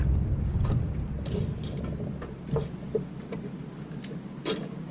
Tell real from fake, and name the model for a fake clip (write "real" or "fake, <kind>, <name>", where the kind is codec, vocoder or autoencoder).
real